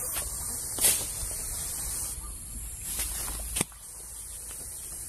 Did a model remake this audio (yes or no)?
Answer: no